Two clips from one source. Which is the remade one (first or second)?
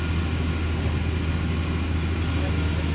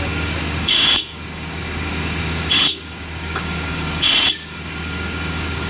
second